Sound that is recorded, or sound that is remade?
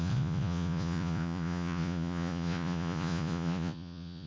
remade